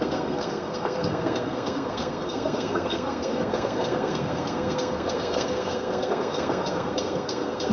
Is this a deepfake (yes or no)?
yes